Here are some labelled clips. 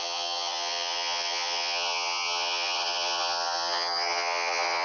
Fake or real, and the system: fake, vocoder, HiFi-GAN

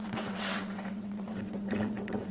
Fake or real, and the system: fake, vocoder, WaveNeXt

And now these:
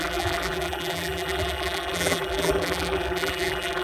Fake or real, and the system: fake, vocoder, BigVGAN v2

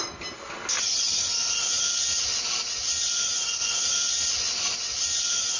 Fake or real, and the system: real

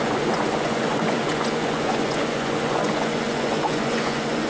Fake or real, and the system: fake, vocoder, Vocos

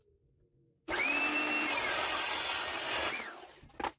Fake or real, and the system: real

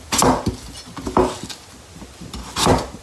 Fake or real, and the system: real